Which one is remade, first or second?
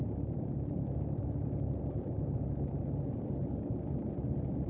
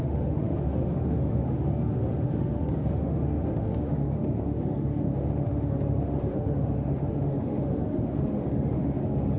second